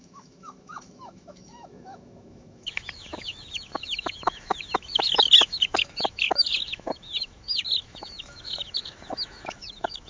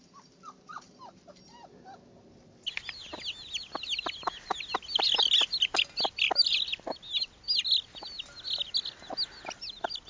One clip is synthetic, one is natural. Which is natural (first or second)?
second